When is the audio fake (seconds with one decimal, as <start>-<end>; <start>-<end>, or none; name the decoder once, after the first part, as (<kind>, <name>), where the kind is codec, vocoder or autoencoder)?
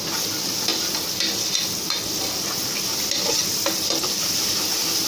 none